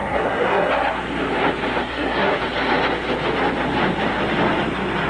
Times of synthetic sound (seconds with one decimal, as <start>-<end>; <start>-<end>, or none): 0.0-0.7; 1.8-2.4